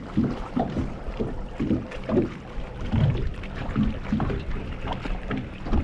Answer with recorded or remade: recorded